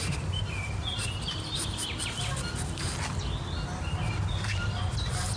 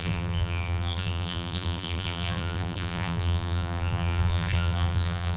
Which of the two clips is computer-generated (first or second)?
second